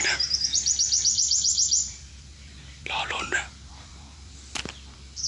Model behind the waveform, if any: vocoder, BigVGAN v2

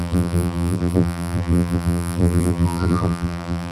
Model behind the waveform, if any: vocoder, BigVGAN v2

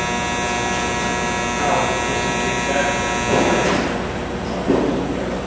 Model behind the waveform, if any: none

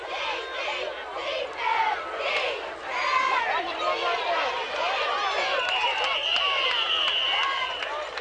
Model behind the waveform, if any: none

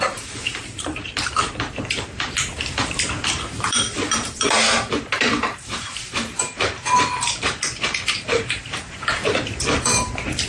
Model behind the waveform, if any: vocoder, BigVGAN v2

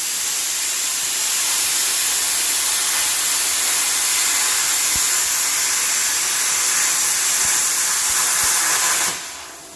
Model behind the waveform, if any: vocoder, BigVGAN v2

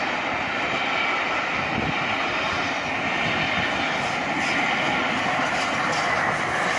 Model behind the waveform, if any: none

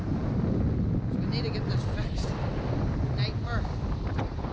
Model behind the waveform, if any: none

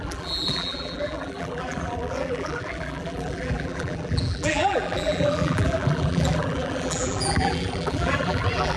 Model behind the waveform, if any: vocoder, BigVGAN v2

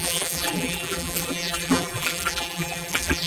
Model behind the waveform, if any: vocoder, BigVGAN v2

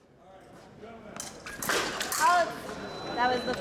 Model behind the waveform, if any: none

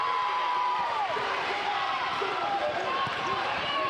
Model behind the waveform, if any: vocoder, BigVGAN v2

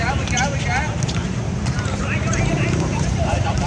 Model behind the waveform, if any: vocoder, BigVGAN v2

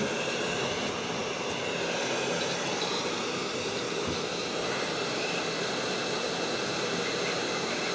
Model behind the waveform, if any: vocoder, BigVGAN v2